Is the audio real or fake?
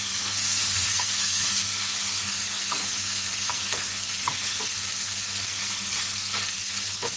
fake